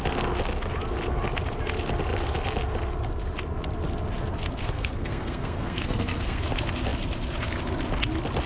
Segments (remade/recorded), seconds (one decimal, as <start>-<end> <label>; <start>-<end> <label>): 0.0-4.6 recorded; 4.6-6.4 remade; 6.4-8.5 recorded

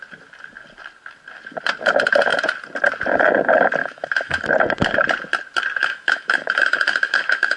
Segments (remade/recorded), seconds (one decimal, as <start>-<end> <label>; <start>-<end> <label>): 0.0-3.8 recorded; 3.8-4.4 remade; 4.4-5.8 recorded; 5.8-7.6 remade